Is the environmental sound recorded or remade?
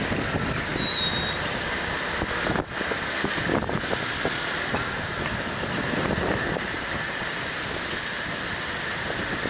recorded